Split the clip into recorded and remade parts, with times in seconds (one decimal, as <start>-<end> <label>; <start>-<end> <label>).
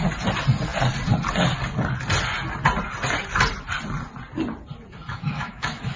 0.0-5.1 recorded; 5.1-6.0 remade